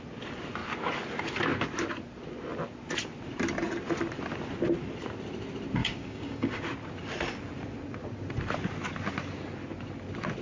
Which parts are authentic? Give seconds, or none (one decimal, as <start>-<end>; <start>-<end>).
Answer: 0.0-5.8; 6.6-10.4